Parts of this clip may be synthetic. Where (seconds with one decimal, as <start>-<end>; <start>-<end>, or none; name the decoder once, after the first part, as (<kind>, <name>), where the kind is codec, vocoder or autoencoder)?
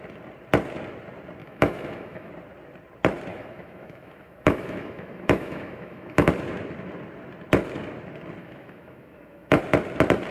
1.4-2.3 (autoencoder, DAC-VAE); 3.3-6.3; 8.4-9.6